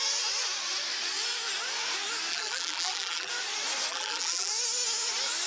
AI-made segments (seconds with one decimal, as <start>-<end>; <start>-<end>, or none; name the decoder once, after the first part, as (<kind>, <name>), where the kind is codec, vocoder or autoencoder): 2.3-3.3 (vocoder, BigVGAN v2); 3.9-4.5